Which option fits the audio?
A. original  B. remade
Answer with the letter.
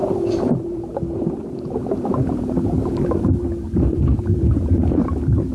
B